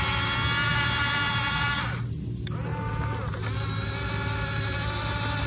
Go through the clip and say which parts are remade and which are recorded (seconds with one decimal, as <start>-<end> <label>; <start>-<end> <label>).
0.0-5.5 recorded